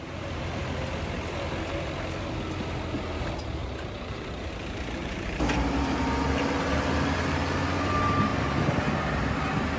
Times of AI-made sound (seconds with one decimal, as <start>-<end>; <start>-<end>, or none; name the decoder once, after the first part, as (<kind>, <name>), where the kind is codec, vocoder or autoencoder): 3.6-4.5 (vocoder, BigVGAN v2); 5.0-7.8